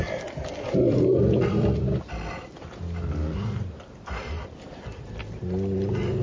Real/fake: real